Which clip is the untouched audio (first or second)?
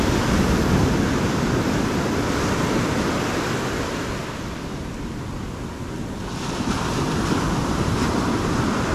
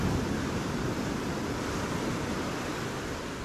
first